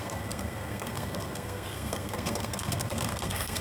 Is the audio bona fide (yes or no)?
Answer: no